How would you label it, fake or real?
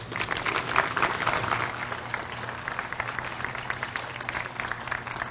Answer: real